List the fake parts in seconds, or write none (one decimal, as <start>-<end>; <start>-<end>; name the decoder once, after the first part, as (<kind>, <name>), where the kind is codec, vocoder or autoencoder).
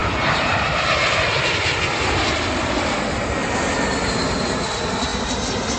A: none